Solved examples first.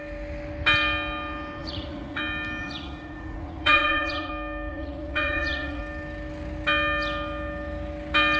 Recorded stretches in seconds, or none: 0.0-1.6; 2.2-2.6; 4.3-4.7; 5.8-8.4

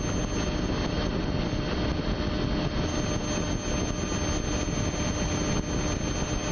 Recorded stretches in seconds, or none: 0.0-6.5

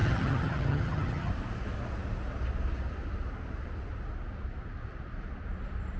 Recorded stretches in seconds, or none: 1.3-6.0

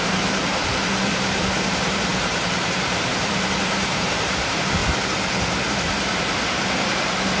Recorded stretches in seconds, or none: 4.8-5.7

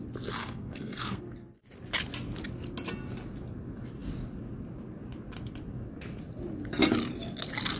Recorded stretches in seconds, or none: 0.0-0.4; 1.2-7.8

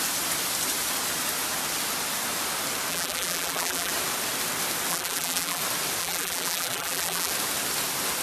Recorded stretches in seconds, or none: 0.0-2.9; 3.9-4.9; 5.6-6.0; 7.3-8.2

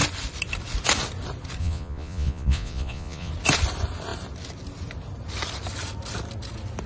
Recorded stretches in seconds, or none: 0.0-1.6; 3.3-6.9

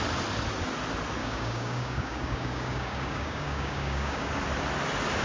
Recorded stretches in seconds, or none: 0.0-1.2; 4.3-5.2